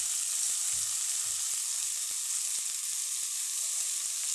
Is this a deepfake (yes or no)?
no